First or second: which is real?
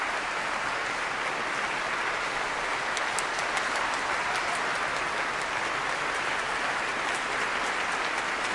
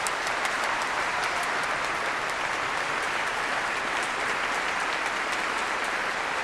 first